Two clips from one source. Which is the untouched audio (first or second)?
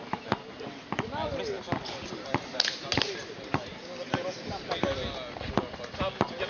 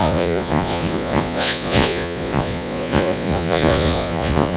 first